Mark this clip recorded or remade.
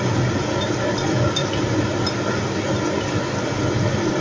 recorded